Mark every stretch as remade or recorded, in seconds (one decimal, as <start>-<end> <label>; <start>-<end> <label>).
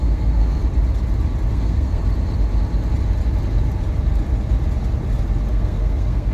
0.0-0.6 remade; 0.6-1.5 recorded; 1.5-2.0 remade; 2.0-5.5 recorded; 5.5-6.3 remade